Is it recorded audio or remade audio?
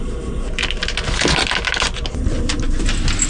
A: recorded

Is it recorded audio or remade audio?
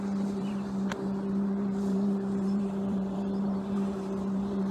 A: remade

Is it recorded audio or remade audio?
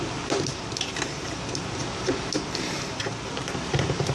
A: remade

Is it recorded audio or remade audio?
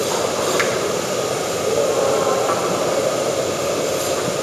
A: remade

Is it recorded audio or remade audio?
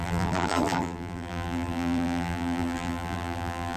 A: remade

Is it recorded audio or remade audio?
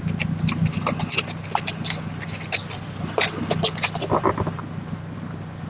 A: recorded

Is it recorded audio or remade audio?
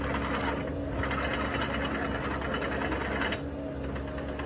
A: recorded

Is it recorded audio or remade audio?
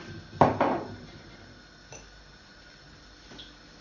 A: recorded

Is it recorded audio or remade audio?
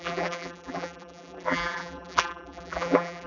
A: remade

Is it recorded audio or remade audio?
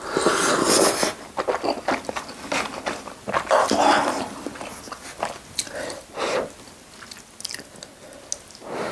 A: recorded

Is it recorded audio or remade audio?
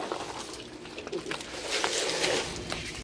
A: remade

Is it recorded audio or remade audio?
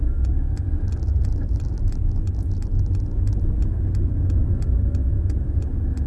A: recorded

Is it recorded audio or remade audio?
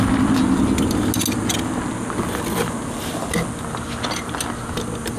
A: recorded